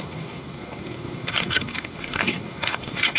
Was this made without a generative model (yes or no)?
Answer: no